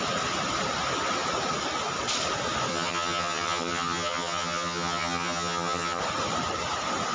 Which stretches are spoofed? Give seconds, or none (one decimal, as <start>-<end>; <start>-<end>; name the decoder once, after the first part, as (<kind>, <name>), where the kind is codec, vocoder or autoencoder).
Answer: 2.7-6.0 (vocoder, HiFi-GAN)

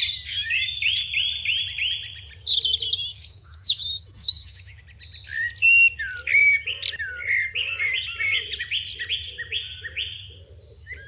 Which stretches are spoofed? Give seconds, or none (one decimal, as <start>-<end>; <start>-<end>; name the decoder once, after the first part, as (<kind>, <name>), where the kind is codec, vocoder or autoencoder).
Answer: 3.1-4.8 (autoencoder, DAC-VAE)

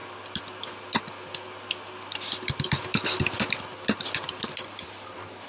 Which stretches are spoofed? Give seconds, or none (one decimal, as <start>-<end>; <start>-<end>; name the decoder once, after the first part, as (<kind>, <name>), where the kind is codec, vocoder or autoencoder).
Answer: none

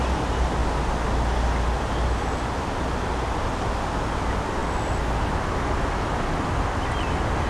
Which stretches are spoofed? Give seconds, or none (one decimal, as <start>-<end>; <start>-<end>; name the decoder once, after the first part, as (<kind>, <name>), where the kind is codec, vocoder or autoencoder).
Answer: none

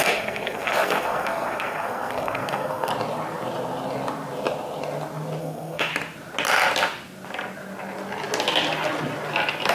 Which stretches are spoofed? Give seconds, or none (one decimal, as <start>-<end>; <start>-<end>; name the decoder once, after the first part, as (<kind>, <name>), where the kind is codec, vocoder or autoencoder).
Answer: 0.0-2.9 (codec, SNAC); 5.4-5.9

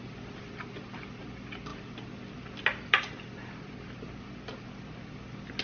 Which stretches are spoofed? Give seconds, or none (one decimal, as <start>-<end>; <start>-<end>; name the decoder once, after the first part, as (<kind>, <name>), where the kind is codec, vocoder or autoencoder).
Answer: none

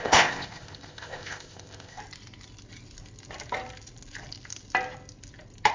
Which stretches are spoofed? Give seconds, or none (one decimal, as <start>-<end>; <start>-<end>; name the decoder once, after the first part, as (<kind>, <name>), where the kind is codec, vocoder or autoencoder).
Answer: 0.0-2.0 (codec, ZipCodec)